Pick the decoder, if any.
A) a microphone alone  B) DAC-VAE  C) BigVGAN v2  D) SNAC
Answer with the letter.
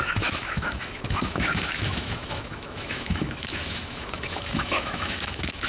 B